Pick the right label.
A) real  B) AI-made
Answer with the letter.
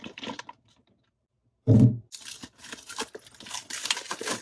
A